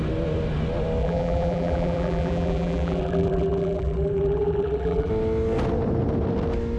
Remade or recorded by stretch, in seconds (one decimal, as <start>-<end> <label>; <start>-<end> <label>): 0.0-1.0 recorded; 1.0-5.1 remade; 5.1-6.8 recorded